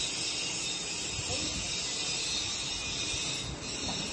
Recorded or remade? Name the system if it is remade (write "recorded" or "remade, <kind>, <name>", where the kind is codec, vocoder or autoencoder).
recorded